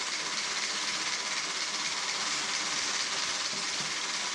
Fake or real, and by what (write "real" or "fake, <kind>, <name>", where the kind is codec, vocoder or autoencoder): real